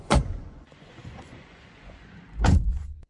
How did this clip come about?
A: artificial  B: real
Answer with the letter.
A